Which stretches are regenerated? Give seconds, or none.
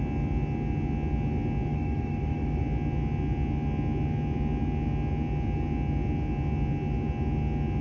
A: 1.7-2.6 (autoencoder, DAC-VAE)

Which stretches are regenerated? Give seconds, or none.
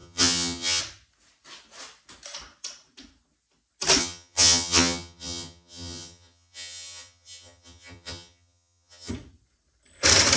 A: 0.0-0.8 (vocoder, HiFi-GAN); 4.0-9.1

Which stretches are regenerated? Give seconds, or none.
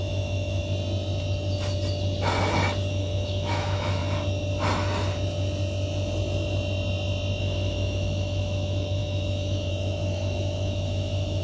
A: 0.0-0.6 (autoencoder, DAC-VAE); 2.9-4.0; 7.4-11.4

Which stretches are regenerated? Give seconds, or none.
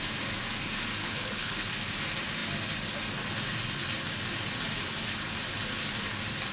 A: 1.0-1.7 (codec, HILCodec)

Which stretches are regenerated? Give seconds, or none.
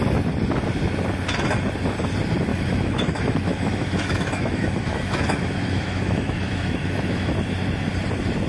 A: 2.5-7.3 (autoencoder, DAC-VAE)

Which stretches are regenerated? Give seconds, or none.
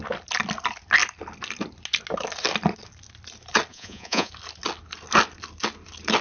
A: 3.7-4.3 (vocoder, Vocos)